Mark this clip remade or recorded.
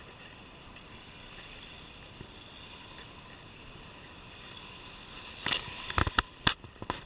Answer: recorded